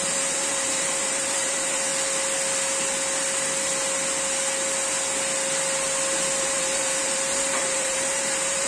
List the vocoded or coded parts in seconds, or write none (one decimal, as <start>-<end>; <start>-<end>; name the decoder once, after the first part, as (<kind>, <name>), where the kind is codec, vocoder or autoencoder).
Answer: 0.0-1.9 (vocoder, BigVGAN v2); 6.4-8.7